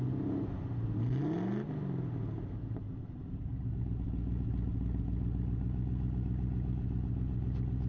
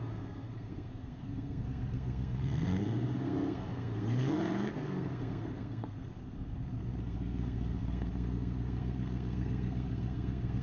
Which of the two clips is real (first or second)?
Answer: first